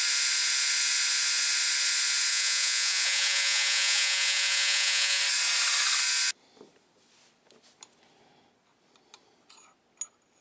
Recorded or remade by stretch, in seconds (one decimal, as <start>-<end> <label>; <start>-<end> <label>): 0.0-2.3 recorded; 2.3-5.2 remade; 5.2-10.4 recorded